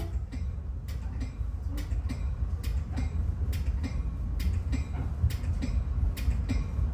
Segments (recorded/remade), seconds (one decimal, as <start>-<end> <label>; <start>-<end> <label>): 0.0-6.9 recorded